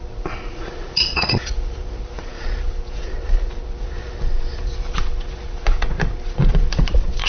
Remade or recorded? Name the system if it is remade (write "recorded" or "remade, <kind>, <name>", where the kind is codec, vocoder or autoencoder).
remade, vocoder, Vocos